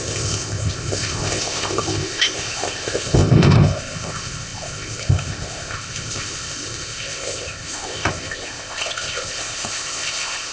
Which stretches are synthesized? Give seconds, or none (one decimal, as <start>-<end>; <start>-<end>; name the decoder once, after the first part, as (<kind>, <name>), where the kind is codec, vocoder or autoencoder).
0.0-10.5 (codec, ZipCodec)